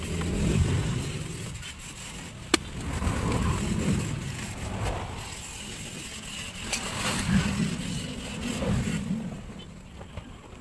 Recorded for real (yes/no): yes